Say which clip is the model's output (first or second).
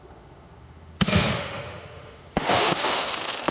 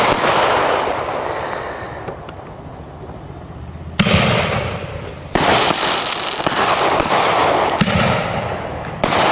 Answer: first